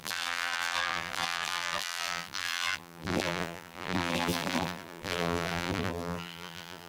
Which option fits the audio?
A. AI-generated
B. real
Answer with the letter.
A